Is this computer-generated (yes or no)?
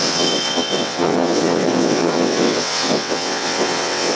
yes